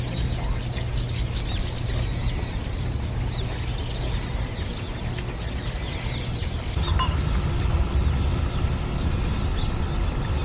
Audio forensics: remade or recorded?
recorded